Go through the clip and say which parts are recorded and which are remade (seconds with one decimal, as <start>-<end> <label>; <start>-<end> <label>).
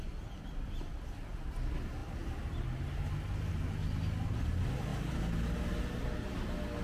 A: 0.0-4.9 recorded; 4.9-5.6 remade; 5.6-6.8 recorded